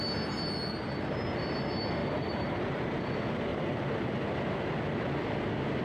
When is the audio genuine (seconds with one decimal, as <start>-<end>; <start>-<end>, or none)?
0.0-2.0; 3.1-3.5; 4.1-5.8